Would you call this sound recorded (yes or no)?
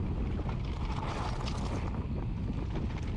yes